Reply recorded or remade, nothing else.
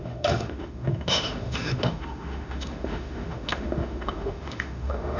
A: remade